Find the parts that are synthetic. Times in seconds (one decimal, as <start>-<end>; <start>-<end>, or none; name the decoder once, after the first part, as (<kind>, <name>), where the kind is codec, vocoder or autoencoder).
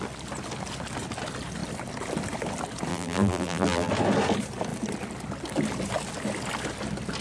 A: 2.9-3.9 (vocoder, BigVGAN v2)